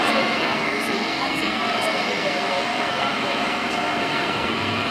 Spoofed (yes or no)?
yes